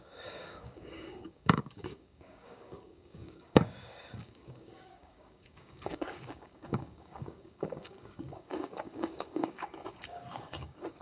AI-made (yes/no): yes